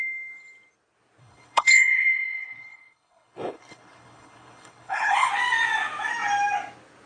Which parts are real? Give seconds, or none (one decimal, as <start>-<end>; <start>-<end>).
0.0-1.2; 5.3-7.1